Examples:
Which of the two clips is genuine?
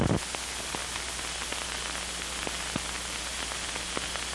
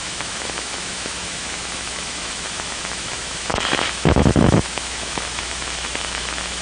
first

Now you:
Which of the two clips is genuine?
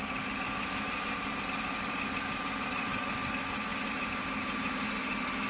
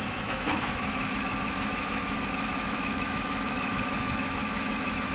first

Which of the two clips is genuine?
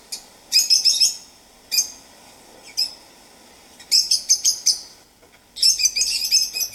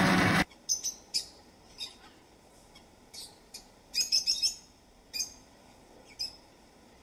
first